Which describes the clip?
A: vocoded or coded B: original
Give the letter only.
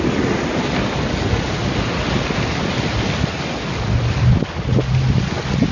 B